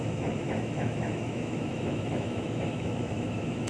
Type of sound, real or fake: fake